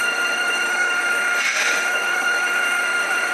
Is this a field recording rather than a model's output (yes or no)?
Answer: no